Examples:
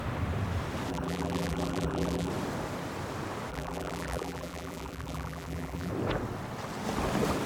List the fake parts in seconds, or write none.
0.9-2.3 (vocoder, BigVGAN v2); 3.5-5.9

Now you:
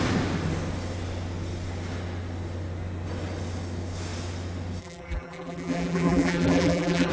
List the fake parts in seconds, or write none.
4.8-7.1 (vocoder, BigVGAN v2)